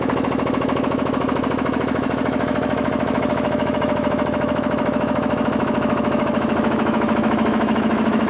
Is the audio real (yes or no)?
no